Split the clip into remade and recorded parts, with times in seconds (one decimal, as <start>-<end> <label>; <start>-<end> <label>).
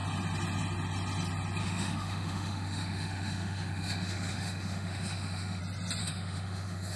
0.0-1.6 recorded; 1.6-5.6 remade; 5.6-6.0 recorded; 6.0-7.0 remade